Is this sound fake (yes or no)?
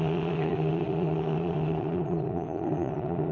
yes